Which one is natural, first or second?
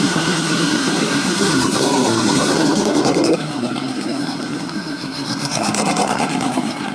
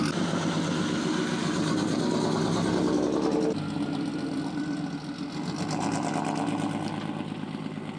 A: second